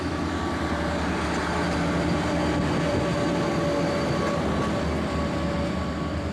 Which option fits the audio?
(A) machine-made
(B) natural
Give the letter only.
B